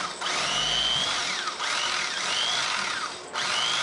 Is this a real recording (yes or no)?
yes